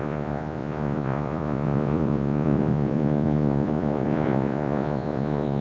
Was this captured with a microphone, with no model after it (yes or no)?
no